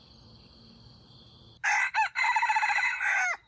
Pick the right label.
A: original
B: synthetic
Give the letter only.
A